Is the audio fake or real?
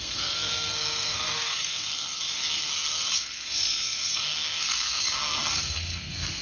fake